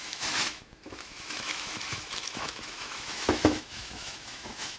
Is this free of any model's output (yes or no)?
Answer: no